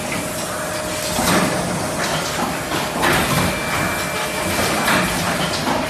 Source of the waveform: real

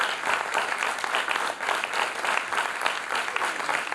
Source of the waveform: real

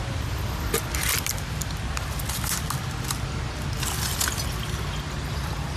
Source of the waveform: real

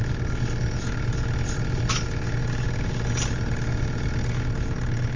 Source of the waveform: real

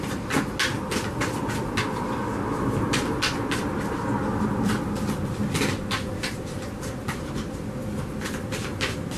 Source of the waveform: real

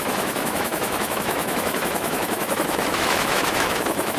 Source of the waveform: fake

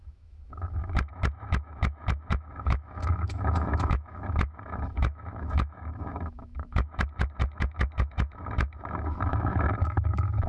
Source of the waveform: fake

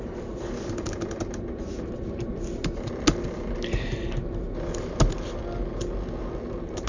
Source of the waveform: real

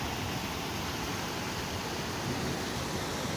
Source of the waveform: real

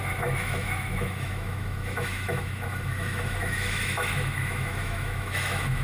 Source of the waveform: fake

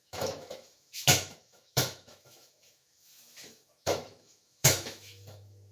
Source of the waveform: fake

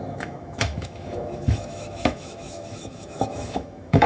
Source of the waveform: fake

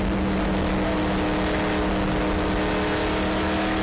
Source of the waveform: real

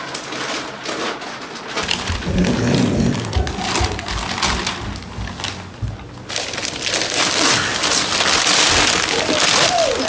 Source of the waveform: real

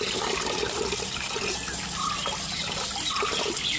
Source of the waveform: real